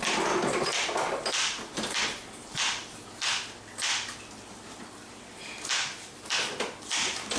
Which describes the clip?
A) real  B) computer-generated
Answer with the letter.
A